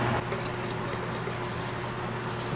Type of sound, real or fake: real